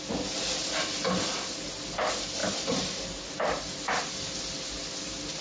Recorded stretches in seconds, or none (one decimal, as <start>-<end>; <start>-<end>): 0.0-2.4; 4.1-5.4